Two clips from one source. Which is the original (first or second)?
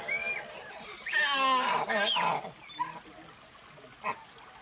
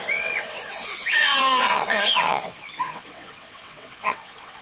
first